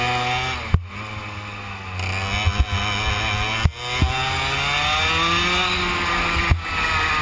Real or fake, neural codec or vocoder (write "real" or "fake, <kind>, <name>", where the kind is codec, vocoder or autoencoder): real